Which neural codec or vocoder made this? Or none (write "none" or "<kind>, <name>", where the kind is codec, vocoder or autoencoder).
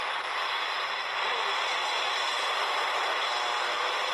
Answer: vocoder, BigVGAN v2